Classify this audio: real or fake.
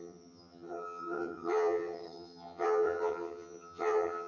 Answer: fake